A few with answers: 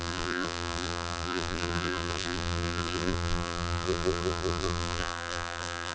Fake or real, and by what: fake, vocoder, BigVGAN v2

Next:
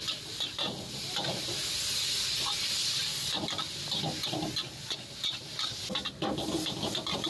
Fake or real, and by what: real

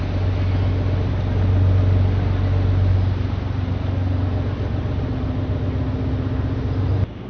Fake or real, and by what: real